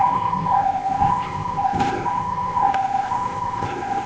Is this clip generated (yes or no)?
yes